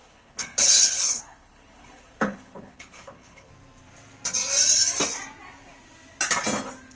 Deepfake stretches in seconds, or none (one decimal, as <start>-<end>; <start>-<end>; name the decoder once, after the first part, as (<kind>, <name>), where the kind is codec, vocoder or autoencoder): 0.0-3.5 (codec, HILCodec)